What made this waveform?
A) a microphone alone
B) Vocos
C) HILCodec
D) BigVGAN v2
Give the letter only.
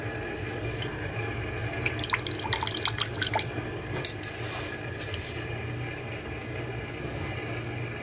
A